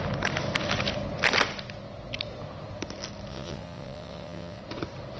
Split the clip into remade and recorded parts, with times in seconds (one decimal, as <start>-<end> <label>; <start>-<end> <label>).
0.0-3.3 recorded; 3.3-4.6 remade; 4.6-5.2 recorded